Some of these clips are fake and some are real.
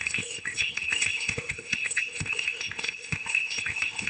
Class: fake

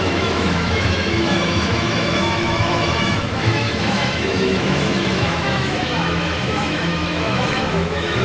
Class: fake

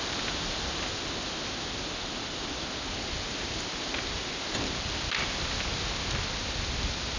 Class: real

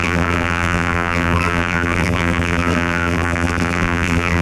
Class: fake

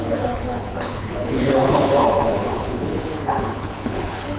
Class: fake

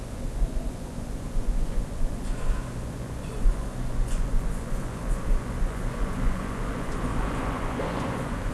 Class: fake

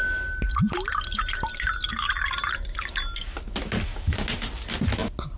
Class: real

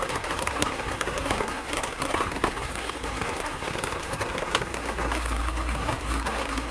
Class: fake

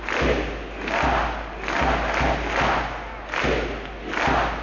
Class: real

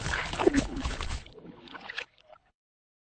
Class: fake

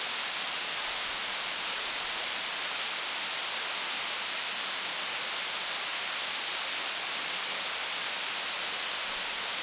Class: real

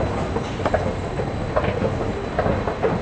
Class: real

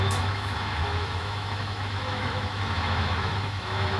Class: fake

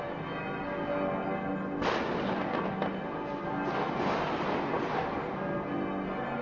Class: real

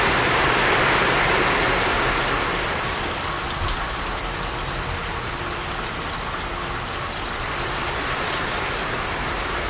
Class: real